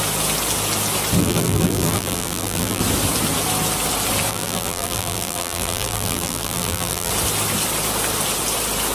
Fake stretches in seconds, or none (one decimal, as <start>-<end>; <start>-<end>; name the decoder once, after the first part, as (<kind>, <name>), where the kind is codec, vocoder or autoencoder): 1.2-2.8 (vocoder, BigVGAN v2); 4.3-7.1